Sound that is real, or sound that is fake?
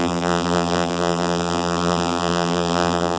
fake